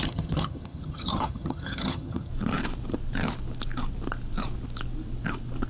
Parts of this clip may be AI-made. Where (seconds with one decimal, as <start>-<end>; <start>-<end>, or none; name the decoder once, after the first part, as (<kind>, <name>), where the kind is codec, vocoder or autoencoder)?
0.0-2.3 (vocoder, HiFi-GAN)